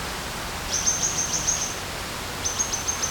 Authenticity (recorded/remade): recorded